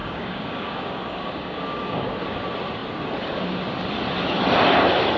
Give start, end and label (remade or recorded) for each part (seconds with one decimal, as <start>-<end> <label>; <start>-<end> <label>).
0.0-2.1 remade; 2.1-5.2 recorded